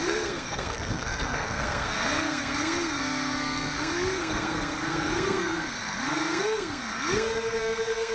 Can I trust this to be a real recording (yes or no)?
no